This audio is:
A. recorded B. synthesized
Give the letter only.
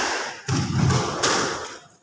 A